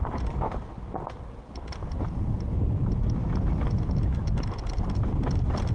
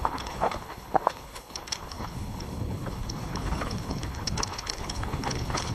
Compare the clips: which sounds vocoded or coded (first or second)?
second